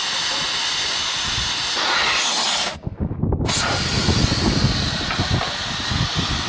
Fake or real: real